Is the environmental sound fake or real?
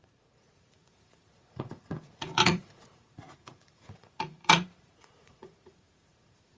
fake